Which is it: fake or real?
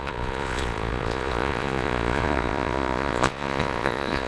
fake